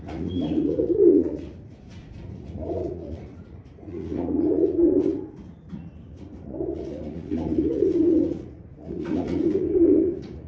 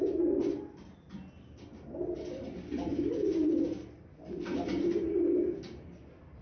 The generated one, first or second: first